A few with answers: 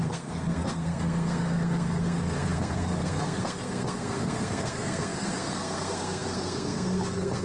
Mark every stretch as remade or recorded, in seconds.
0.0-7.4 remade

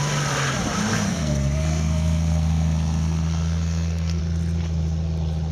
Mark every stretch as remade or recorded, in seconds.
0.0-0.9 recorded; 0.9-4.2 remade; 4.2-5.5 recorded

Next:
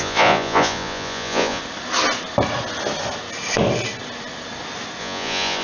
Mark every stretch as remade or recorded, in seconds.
0.0-1.6 remade; 1.6-5.0 recorded; 5.0-5.6 remade

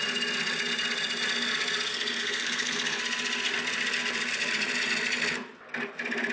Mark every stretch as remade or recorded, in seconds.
0.0-1.9 recorded; 1.9-3.0 remade; 3.0-6.3 recorded